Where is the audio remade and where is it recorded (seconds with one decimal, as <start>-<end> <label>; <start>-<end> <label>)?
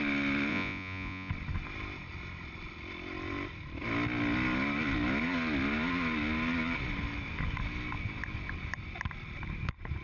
0.0-0.5 recorded; 0.5-1.3 remade; 1.3-10.0 recorded